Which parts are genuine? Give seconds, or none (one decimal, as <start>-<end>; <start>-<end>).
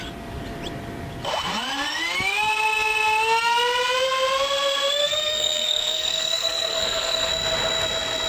0.0-5.0; 7.3-8.3